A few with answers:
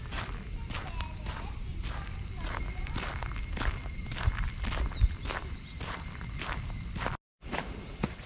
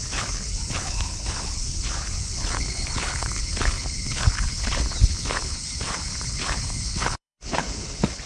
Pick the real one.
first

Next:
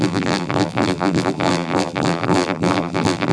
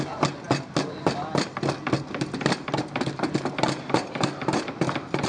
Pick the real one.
second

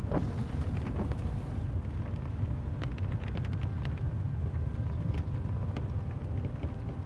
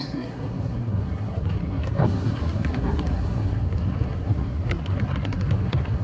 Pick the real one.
first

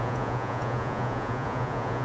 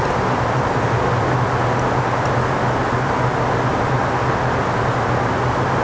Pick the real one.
second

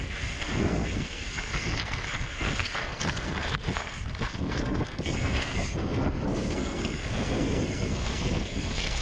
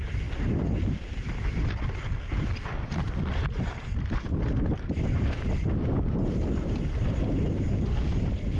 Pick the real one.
second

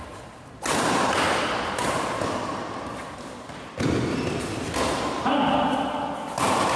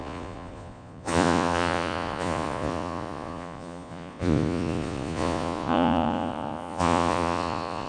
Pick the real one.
first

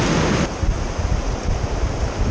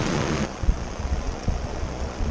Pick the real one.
first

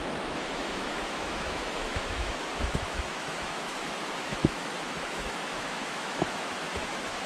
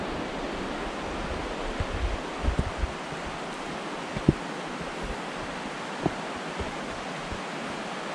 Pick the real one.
second